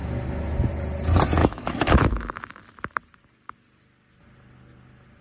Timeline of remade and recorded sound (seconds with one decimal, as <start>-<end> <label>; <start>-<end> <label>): 0.0-1.4 recorded; 1.4-2.6 remade; 2.6-5.2 recorded